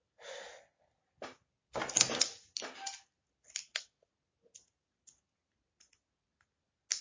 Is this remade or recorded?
recorded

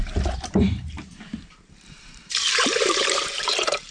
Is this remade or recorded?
remade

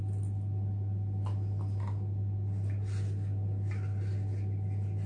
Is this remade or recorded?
recorded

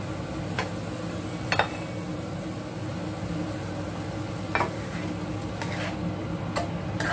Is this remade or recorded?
recorded